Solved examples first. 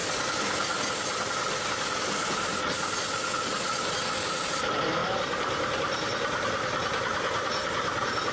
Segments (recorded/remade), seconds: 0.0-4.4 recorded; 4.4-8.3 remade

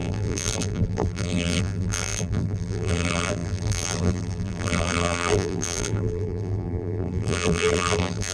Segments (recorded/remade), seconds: 0.0-8.3 remade

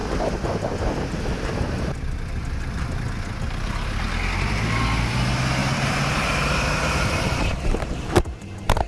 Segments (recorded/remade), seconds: 0.0-5.6 recorded; 5.6-8.1 remade; 8.1-8.9 recorded